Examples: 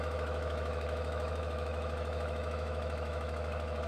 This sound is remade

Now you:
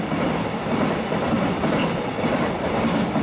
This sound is recorded